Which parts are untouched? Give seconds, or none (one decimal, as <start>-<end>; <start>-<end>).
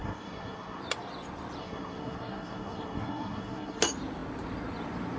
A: 0.8-1.6; 3.8-5.2